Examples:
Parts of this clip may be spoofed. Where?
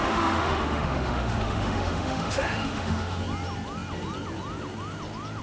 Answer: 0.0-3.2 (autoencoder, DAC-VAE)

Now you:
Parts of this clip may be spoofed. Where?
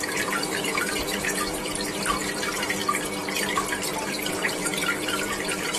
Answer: 0.0-2.8 (vocoder, BigVGAN v2); 4.3-5.8